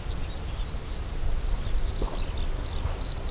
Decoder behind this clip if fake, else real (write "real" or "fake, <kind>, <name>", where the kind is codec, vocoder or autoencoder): real